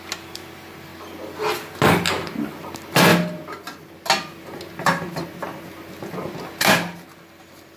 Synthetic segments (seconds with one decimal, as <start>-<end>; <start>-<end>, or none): none